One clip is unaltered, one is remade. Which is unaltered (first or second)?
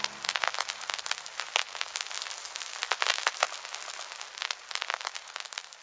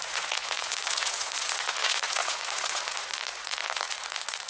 first